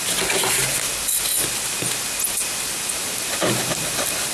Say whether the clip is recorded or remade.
recorded